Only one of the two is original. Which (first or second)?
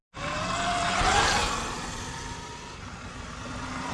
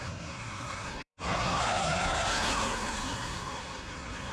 first